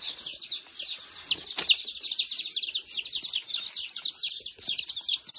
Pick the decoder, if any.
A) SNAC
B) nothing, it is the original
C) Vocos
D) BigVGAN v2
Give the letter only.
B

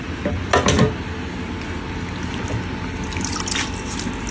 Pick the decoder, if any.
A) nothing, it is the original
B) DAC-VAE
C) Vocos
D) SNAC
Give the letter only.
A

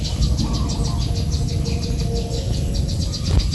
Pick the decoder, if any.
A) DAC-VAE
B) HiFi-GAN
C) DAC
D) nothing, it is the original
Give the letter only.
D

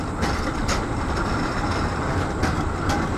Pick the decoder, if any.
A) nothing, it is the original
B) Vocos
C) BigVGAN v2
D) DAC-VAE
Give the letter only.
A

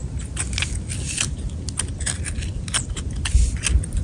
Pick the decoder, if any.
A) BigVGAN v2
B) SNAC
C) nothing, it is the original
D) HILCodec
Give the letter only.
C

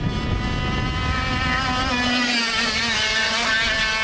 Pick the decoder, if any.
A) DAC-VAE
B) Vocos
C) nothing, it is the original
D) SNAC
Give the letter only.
C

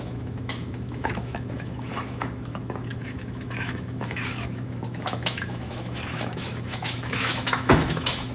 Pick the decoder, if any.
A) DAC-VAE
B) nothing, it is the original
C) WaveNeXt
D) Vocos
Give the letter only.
A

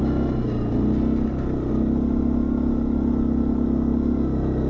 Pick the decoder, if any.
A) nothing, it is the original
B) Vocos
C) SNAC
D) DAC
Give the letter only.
A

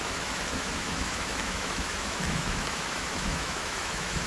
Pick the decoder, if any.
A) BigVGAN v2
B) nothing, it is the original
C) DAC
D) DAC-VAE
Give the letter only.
D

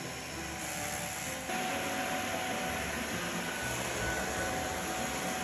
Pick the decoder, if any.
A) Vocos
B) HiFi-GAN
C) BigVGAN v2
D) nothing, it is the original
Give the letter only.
D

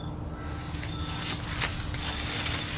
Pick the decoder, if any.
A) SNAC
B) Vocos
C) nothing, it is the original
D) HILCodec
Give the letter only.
C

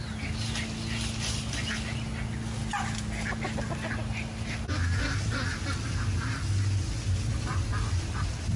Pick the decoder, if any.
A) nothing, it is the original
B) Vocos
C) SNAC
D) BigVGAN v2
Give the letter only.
A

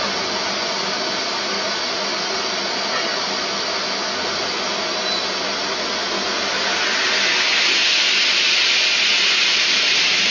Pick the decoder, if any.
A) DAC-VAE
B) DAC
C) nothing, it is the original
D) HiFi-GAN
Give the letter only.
C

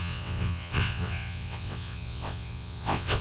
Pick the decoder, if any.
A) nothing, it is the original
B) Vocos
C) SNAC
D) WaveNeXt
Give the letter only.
D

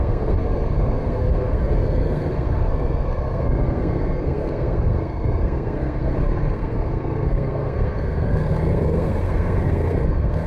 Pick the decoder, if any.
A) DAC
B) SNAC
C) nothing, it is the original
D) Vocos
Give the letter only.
B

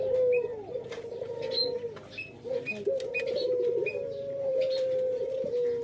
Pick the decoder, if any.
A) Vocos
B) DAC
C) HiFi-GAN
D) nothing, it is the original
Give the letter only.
D